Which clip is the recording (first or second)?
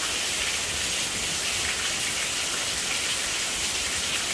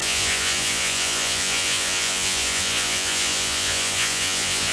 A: first